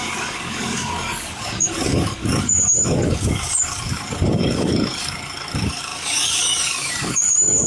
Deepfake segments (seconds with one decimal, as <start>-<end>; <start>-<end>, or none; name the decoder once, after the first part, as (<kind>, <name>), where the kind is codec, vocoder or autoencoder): 0.0-7.7 (codec, DAC)